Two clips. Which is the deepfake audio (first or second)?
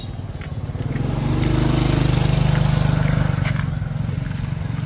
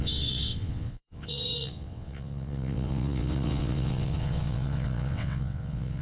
second